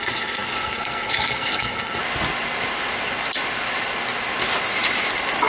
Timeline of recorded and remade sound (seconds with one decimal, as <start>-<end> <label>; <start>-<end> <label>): 0.0-2.0 remade; 2.0-5.5 recorded